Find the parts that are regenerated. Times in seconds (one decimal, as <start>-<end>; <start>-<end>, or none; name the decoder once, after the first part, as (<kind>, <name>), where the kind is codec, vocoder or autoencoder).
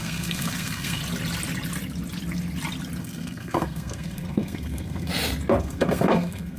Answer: 0.0-1.0 (codec, SNAC); 3.0-5.1; 5.6-6.6